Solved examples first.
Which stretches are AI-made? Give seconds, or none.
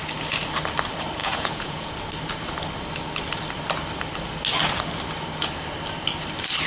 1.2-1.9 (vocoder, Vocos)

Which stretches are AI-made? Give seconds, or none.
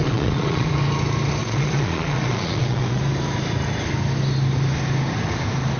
0.0-0.7 (vocoder, Vocos); 1.4-3.0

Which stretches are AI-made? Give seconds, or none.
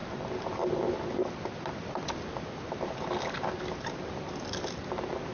none